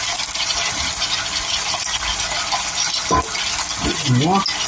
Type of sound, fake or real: real